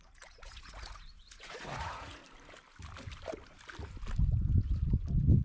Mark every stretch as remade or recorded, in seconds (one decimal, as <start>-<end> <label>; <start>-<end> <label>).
0.0-2.2 remade; 2.2-5.4 recorded